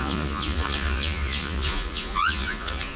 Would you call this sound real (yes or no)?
no